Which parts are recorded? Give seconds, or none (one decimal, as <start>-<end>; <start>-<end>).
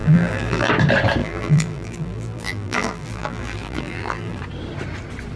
0.7-1.2; 4.4-5.4